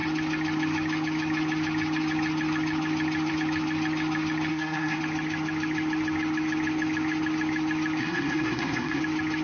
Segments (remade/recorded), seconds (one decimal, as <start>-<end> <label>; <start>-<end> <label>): 0.0-4.5 recorded; 4.5-5.0 remade; 5.0-8.0 recorded; 8.0-9.0 remade; 9.0-9.4 recorded